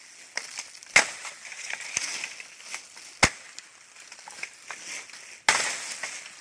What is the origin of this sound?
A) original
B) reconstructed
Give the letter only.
A